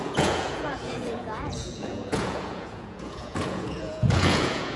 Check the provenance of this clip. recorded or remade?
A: remade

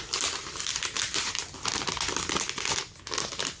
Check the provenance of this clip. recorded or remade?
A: recorded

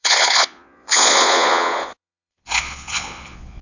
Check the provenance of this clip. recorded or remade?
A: remade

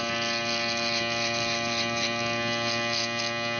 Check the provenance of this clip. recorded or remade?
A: recorded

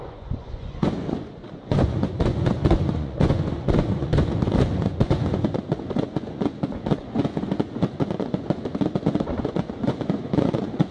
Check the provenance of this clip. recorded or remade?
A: remade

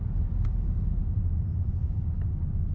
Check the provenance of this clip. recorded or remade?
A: recorded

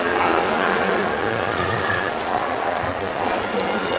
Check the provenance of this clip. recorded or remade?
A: remade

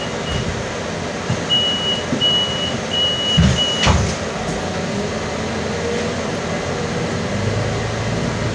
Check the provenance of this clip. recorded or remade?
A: recorded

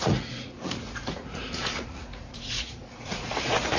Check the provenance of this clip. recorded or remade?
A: remade